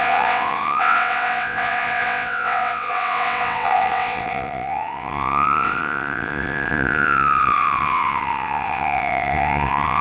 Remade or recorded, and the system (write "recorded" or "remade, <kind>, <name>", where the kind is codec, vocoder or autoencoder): remade, vocoder, WaveNeXt